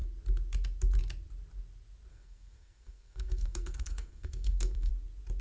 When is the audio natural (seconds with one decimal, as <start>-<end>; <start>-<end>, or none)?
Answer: 0.0-2.1; 4.9-5.4